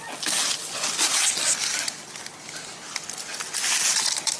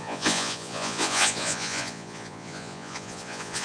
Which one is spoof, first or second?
second